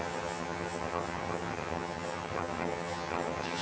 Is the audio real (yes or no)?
no